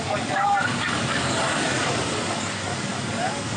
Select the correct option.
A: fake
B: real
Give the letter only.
A